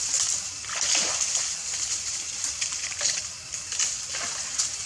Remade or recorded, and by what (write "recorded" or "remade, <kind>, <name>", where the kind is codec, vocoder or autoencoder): recorded